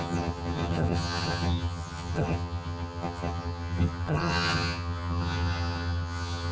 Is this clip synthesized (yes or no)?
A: yes